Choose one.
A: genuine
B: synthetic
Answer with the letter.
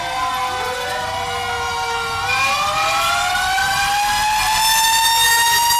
A